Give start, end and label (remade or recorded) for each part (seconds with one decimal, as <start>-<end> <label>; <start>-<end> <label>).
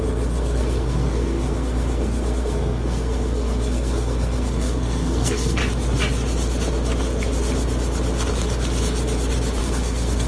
0.0-5.6 remade; 5.6-9.6 recorded; 9.6-10.3 remade